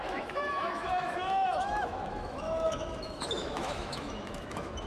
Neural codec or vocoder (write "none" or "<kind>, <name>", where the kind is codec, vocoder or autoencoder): autoencoder, DAC-VAE